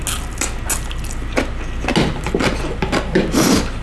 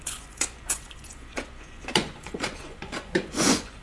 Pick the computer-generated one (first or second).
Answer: second